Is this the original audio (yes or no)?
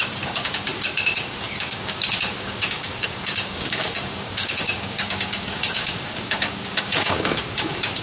no